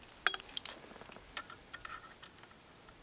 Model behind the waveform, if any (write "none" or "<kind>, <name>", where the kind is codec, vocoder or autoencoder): none